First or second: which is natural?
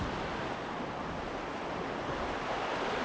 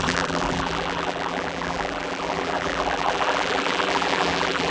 first